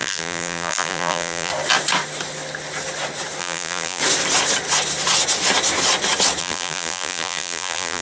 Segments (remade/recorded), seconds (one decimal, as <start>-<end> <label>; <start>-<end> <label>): 0.0-1.5 remade; 1.5-3.4 recorded; 3.4-4.0 remade; 4.0-6.4 recorded; 6.4-8.0 remade